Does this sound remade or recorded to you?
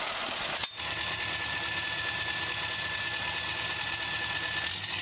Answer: recorded